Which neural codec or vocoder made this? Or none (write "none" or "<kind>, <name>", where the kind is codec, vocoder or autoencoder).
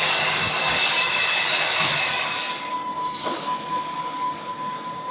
codec, DAC